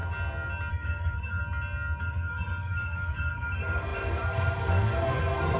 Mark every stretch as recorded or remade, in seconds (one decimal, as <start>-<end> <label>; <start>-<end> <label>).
0.0-0.7 recorded; 0.7-1.4 remade; 1.4-2.0 recorded; 2.0-5.6 remade

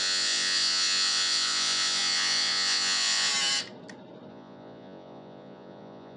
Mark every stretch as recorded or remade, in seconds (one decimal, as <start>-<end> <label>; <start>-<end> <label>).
0.0-3.3 remade; 3.3-4.3 recorded; 4.3-6.2 remade

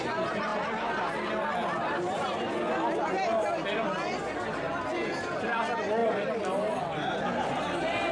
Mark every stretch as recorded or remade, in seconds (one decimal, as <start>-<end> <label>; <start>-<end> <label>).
0.0-8.1 recorded

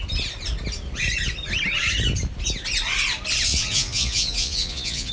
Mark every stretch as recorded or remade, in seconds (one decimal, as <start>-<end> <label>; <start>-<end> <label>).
0.0-3.5 recorded; 3.5-5.1 remade

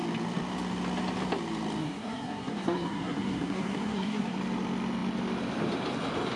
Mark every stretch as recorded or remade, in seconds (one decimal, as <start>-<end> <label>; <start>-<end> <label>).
0.0-1.8 recorded; 1.8-4.4 remade; 4.4-6.4 recorded